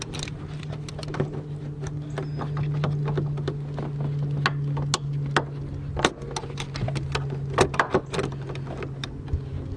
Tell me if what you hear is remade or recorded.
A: recorded